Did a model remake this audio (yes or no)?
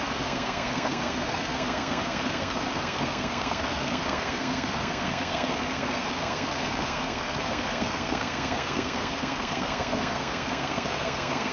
yes